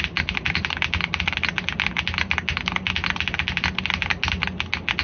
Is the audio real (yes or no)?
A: yes